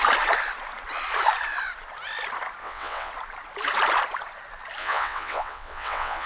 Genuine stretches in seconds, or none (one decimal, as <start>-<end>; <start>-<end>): 0.0-2.6; 3.1-4.8